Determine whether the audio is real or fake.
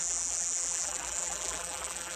fake